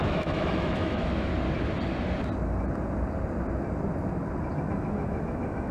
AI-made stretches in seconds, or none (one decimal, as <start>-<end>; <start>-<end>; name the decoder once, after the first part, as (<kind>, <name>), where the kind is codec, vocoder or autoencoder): 0.0-1.3 (autoencoder, DAC-VAE); 4.7-5.7